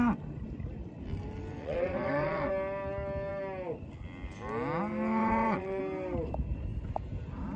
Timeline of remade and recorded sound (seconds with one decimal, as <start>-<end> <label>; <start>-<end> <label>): 0.0-1.6 recorded; 1.6-2.5 remade; 2.5-5.2 recorded; 5.2-5.8 remade; 5.8-7.6 recorded